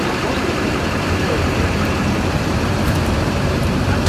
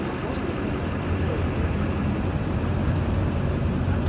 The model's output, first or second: first